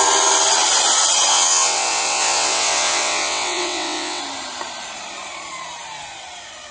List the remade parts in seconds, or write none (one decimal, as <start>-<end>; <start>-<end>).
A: 1.3-4.2